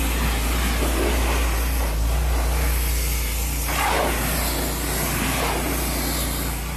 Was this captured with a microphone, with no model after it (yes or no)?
yes